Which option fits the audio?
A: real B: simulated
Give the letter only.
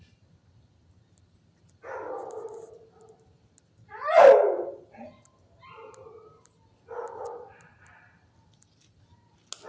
A